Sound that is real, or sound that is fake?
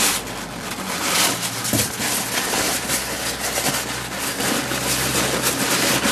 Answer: real